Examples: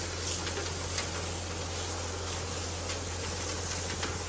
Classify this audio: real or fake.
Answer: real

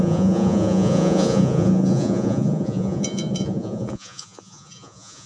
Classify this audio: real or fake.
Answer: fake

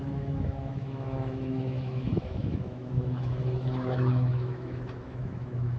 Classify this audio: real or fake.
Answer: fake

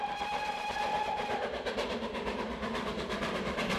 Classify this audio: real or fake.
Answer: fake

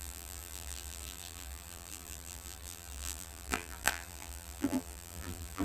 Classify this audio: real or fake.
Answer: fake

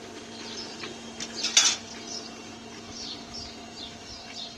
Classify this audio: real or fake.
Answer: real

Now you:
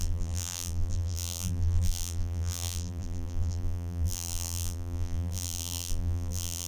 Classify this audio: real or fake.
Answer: fake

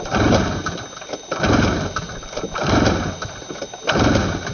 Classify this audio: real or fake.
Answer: fake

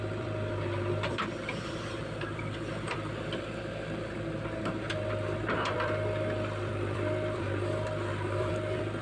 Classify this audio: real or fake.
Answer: fake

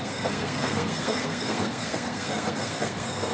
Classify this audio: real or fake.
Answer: fake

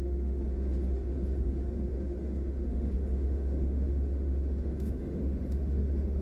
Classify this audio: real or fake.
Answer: fake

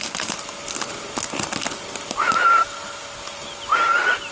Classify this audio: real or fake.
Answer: real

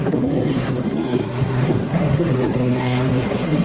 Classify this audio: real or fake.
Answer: fake